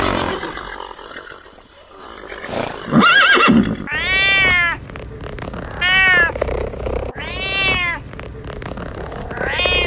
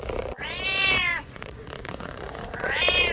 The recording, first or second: first